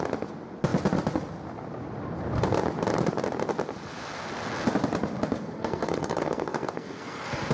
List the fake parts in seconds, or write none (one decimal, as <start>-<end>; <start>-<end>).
5.4-7.5